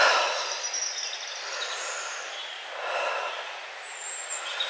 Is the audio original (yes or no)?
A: yes